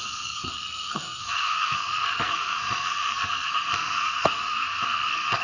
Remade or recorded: remade